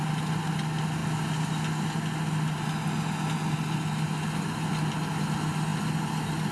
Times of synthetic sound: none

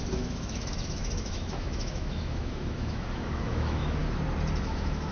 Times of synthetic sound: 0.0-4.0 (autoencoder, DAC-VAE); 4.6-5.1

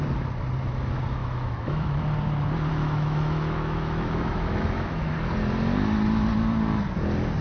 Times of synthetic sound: 1.2-2.0 (autoencoder, DAC-VAE); 2.7-5.1

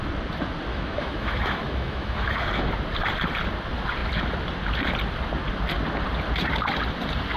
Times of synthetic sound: 0.7-2.7 (autoencoder, DAC-VAE)

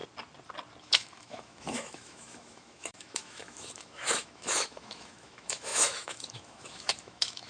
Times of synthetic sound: 0.8-7.5 (autoencoder, DAC-VAE)

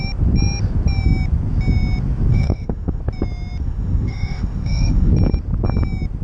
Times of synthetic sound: 2.3-3.0 (autoencoder, DAC-VAE); 3.6-5.1

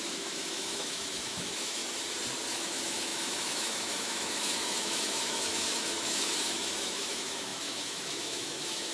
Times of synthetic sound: 0.0-1.8 (autoencoder, DAC-VAE); 2.5-8.9

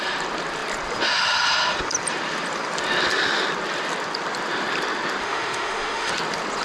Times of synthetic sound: 5.2-6.1 (autoencoder, DAC-VAE)